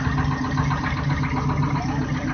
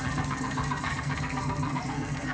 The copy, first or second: second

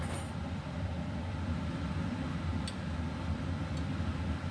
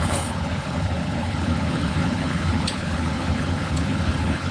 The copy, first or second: second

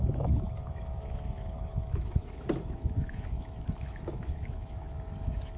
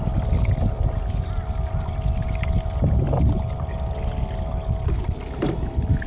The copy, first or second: first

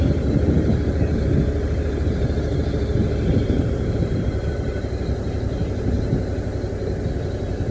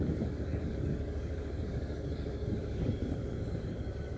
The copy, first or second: second